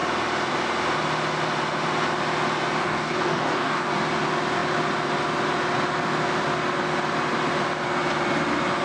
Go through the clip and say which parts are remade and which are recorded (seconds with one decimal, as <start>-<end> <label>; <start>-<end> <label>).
0.0-2.8 recorded; 2.8-3.9 remade; 3.9-8.8 recorded